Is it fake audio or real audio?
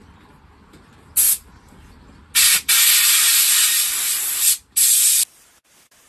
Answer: real